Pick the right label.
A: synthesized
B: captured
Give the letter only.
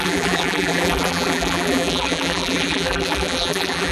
A